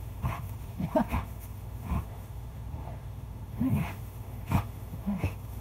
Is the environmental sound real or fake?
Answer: fake